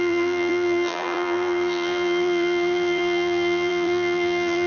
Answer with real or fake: fake